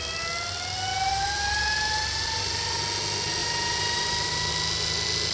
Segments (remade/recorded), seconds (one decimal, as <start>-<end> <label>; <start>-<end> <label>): 0.0-0.9 recorded; 0.9-2.8 remade; 2.8-3.4 recorded; 3.4-4.5 remade; 4.5-5.3 recorded